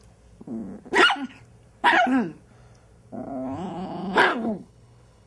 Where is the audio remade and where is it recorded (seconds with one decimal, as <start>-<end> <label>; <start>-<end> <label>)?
0.0-4.3 recorded; 4.3-5.3 remade